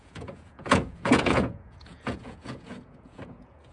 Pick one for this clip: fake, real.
fake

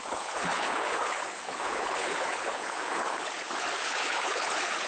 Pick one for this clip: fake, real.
fake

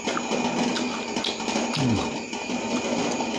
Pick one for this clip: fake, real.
real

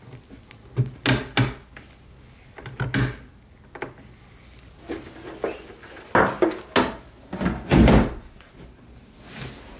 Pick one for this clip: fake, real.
real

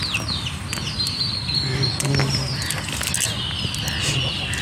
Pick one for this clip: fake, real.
real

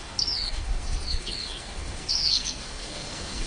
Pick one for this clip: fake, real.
fake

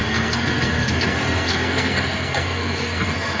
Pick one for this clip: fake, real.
fake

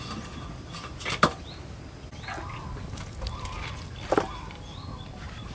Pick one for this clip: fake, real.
real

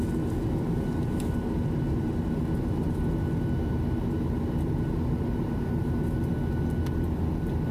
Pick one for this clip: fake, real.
real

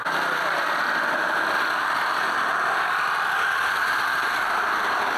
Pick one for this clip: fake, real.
real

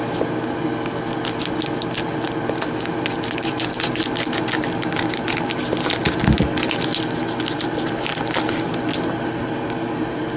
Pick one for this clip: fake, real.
real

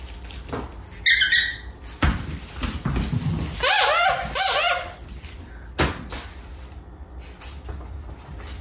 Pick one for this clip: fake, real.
real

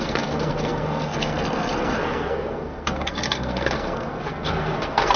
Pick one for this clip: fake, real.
fake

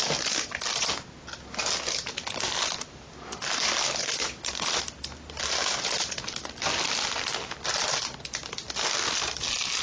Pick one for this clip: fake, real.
real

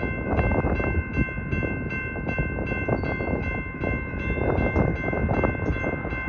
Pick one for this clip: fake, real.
real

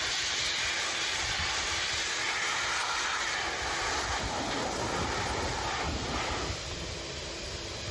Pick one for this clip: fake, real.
real